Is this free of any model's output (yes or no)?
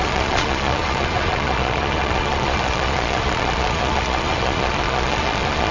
no